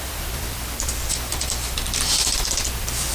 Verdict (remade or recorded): remade